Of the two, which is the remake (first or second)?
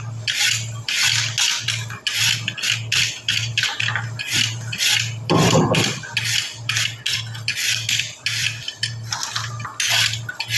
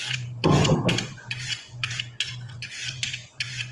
second